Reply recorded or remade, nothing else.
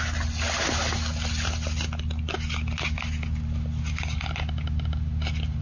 recorded